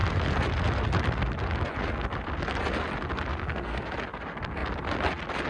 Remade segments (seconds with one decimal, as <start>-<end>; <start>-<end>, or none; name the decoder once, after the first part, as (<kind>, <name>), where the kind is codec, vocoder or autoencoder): 3.3-3.9 (codec, SNAC)